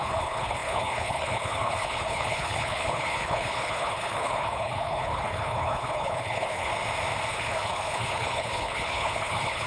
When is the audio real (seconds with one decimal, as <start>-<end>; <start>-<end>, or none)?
6.7-7.3